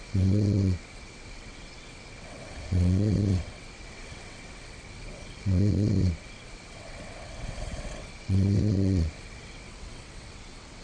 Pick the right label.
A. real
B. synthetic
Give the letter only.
B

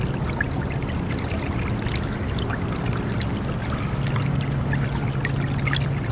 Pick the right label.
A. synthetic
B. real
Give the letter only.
B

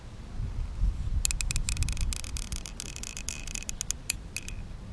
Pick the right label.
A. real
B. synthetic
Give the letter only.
A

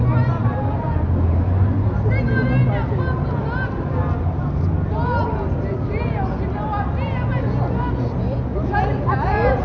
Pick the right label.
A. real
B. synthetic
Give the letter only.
A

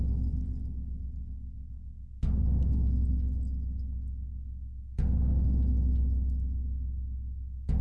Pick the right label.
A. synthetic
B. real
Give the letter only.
B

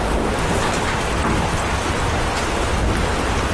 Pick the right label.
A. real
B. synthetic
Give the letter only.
A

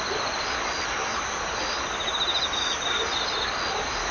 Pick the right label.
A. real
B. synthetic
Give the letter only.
A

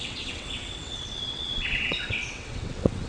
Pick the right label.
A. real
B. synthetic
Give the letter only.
B